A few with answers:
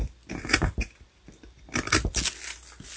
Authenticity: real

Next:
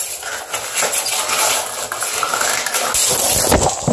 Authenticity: real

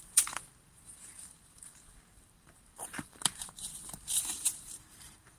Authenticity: fake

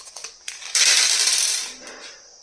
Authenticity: real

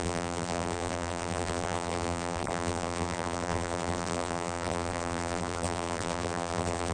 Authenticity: fake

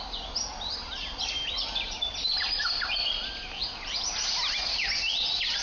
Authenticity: real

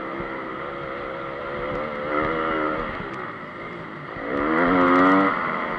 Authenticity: real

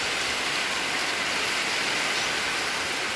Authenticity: real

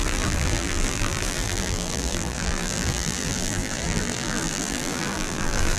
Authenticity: fake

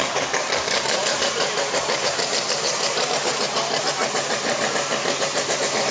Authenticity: fake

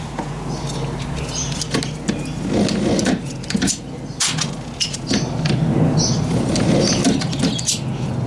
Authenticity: real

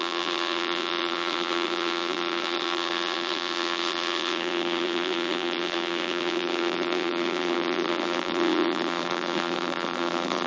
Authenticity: fake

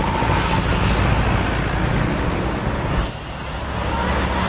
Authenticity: real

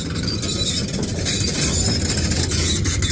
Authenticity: fake